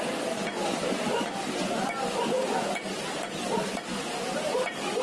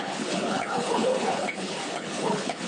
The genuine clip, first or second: first